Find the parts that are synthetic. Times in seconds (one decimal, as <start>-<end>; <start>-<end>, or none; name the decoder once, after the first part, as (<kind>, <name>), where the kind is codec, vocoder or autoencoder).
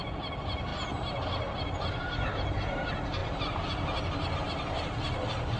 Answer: none